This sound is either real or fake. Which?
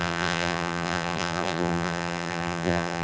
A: fake